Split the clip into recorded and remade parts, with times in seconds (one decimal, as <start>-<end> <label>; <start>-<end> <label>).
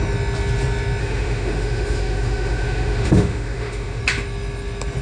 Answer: 0.0-1.0 recorded; 1.0-4.0 remade; 4.0-5.0 recorded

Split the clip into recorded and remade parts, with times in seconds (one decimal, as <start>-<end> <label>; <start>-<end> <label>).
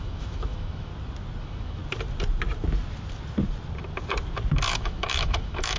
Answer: 0.0-0.9 remade; 0.9-1.4 recorded; 1.4-1.8 remade; 1.8-4.7 recorded; 4.7-5.8 remade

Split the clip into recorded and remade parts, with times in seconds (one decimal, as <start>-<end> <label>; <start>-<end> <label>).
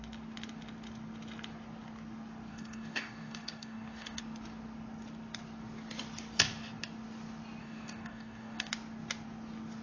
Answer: 0.0-2.5 recorded; 2.5-4.2 remade; 4.2-7.6 recorded; 7.6-8.7 remade; 8.7-9.8 recorded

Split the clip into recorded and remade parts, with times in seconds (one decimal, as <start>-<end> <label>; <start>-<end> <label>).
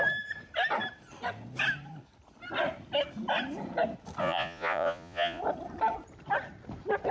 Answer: 0.0-4.2 recorded; 4.2-5.4 remade; 5.4-7.1 recorded